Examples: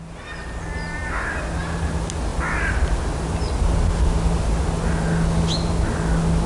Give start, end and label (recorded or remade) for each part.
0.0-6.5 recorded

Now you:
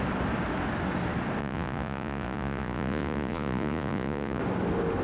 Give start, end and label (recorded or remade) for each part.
0.0-1.4 recorded; 1.4-4.4 remade; 4.4-5.0 recorded

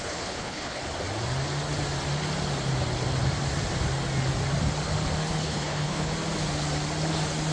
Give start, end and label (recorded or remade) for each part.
0.0-0.8 remade; 0.8-5.3 recorded; 5.3-6.1 remade; 6.1-7.5 recorded

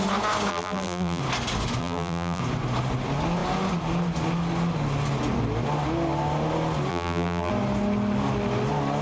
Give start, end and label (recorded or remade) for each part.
0.0-0.5 recorded; 0.5-1.2 remade; 1.2-1.8 recorded; 1.8-2.4 remade; 2.4-6.9 recorded; 6.9-7.5 remade; 7.5-9.0 recorded

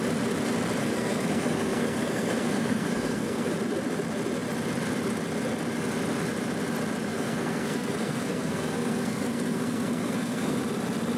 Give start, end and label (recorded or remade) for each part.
0.0-0.8 recorded; 0.8-3.5 remade; 3.5-7.1 recorded; 7.1-10.6 remade; 10.6-11.2 recorded

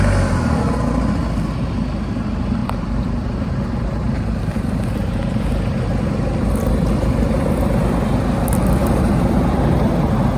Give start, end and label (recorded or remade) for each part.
0.0-2.6 recorded; 2.6-5.3 remade; 5.3-8.8 recorded; 8.8-9.9 remade; 9.9-10.4 recorded

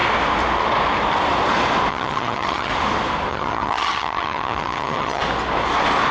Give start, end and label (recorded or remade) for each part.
0.0-1.9 recorded; 1.9-2.7 remade; 2.7-3.3 recorded; 3.3-5.2 remade; 5.2-6.1 recorded